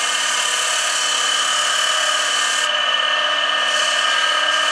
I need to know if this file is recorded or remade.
recorded